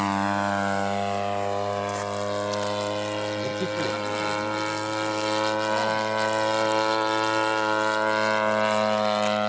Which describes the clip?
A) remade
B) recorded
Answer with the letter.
B